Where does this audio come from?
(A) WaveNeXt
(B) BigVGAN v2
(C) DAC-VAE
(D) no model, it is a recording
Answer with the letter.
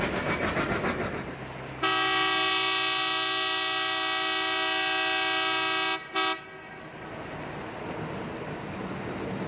D